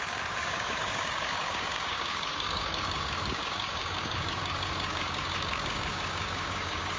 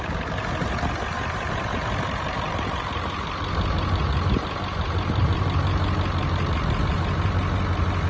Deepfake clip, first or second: first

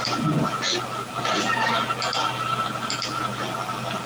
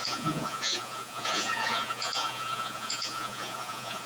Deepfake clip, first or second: second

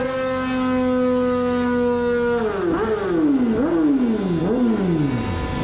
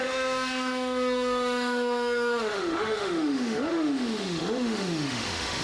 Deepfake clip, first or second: second